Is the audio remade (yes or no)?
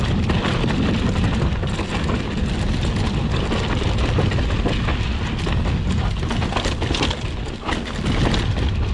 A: no